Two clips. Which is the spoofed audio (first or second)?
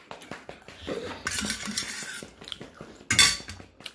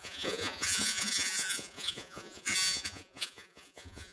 second